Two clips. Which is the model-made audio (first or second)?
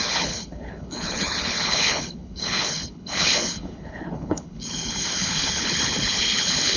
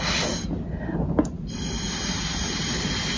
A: first